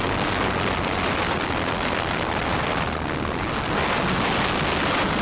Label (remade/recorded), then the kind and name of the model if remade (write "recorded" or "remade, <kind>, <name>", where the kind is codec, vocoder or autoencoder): recorded